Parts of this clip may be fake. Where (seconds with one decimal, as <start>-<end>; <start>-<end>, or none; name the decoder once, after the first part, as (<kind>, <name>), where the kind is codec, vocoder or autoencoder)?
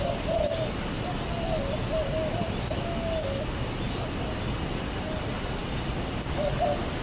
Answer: none